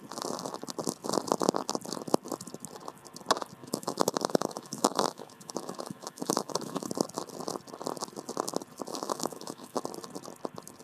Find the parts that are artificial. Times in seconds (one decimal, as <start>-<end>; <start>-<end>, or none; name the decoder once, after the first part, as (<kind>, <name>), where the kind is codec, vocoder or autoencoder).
3.6-6.9 (autoencoder, DAC-VAE); 8.9-9.8